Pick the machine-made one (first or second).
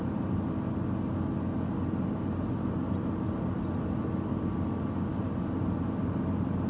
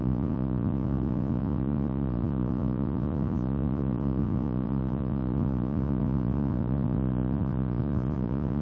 second